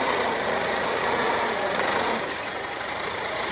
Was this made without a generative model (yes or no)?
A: no